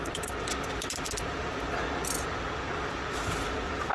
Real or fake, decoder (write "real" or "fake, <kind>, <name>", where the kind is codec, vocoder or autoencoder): real